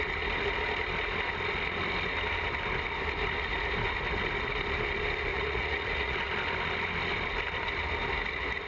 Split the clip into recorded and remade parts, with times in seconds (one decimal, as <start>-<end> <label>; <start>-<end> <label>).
0.0-5.3 recorded; 5.3-6.3 remade; 6.3-8.7 recorded